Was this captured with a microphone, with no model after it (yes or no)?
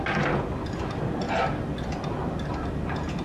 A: yes